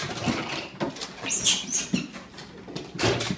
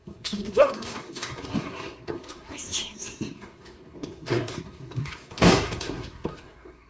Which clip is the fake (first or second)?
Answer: second